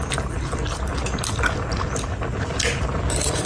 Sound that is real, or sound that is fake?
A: real